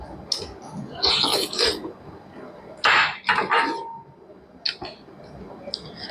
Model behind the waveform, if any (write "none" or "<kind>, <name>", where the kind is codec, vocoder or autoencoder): none